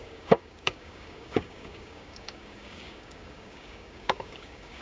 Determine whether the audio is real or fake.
fake